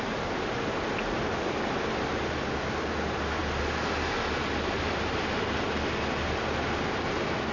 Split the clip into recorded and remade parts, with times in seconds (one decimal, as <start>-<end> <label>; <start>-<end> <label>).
0.0-7.5 recorded